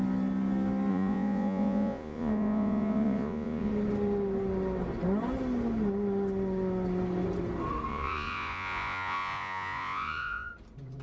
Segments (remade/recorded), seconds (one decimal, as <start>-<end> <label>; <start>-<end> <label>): 0.0-0.9 recorded; 0.9-3.7 remade; 3.7-7.9 recorded; 7.9-10.5 remade; 10.5-11.0 recorded